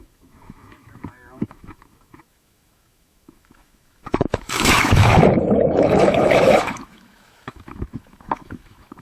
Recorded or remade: remade